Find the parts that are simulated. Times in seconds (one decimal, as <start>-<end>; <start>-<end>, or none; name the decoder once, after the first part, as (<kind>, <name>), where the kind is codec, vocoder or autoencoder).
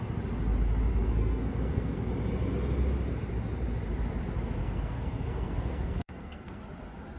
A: 0.9-2.1 (codec, SNAC); 4.6-6.6